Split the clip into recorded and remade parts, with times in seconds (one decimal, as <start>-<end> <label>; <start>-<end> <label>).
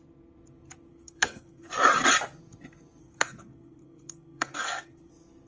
0.0-0.9 recorded; 0.9-1.7 remade; 1.7-3.0 recorded; 3.0-5.1 remade; 5.1-5.5 recorded